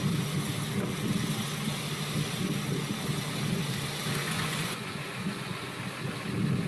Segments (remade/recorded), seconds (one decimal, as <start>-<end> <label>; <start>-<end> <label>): 0.0-4.2 recorded; 4.2-5.7 remade; 5.7-6.7 recorded